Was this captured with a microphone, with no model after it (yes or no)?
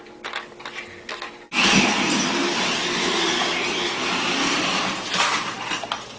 yes